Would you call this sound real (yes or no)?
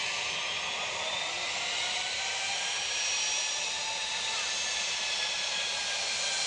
yes